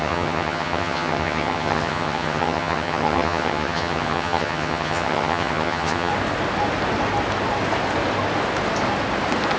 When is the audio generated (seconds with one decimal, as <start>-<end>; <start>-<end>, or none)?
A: 0.0-6.1